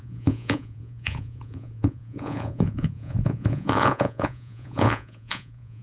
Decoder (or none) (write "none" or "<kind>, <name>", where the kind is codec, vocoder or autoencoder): vocoder, Vocos